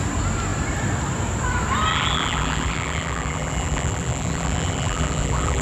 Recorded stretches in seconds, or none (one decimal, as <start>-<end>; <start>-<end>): 0.0-1.9